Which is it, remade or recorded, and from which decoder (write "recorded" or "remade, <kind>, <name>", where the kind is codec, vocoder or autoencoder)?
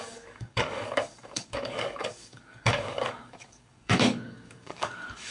remade, codec, DAC